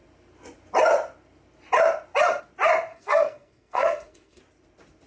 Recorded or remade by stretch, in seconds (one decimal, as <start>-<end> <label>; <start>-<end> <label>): 0.0-2.9 recorded; 2.9-4.4 remade; 4.4-5.1 recorded